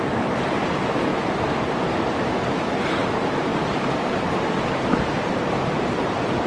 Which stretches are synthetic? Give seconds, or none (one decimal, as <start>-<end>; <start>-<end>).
0.0-1.1; 2.8-6.5